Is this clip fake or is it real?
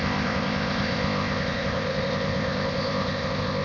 fake